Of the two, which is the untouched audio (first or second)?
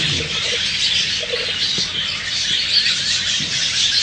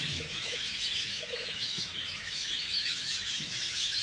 first